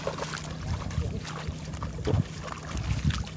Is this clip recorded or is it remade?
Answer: recorded